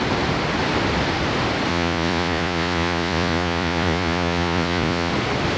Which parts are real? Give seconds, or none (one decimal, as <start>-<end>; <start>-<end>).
0.0-1.7; 5.1-5.6